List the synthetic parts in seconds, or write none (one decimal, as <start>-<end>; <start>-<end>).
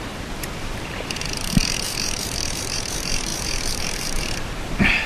0.0-5.1